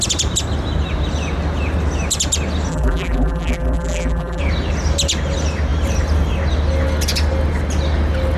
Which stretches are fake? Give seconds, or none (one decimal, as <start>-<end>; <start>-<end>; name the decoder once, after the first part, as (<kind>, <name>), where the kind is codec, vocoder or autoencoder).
2.7-4.4 (vocoder, BigVGAN v2)